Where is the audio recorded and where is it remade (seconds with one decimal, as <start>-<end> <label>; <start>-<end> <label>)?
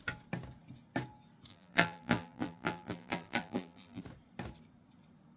0.0-1.5 recorded; 1.5-4.0 remade; 4.0-5.4 recorded